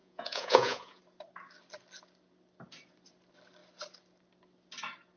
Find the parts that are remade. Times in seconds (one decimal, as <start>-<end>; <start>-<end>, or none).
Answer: 0.0-1.0